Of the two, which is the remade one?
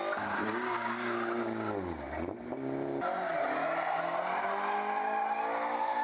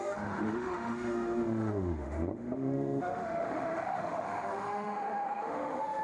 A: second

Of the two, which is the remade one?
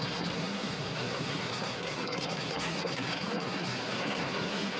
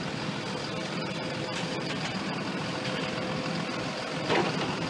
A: first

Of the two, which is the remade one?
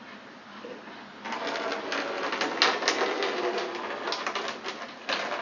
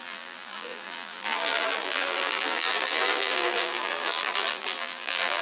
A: second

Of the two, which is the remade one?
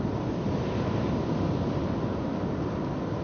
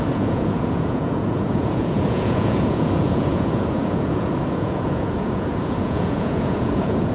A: second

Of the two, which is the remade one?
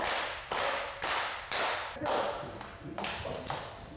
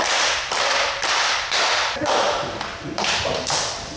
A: second